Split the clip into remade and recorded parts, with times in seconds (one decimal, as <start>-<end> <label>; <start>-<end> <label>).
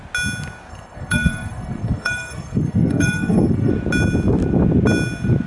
0.0-0.7 recorded; 0.7-3.7 remade; 3.7-5.5 recorded